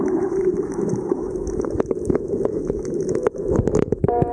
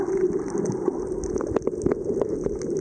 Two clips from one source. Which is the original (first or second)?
second